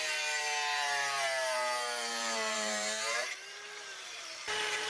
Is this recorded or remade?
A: remade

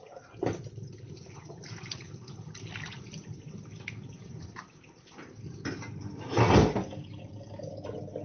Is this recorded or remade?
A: recorded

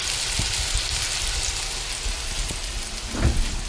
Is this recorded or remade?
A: recorded